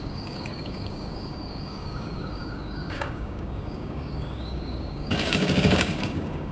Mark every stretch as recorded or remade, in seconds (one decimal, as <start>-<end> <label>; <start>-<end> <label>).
0.0-6.5 remade